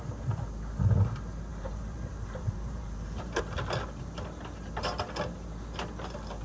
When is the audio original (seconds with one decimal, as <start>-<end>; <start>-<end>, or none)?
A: 0.0-1.5; 3.4-6.4